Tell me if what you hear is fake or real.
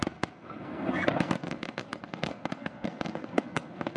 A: fake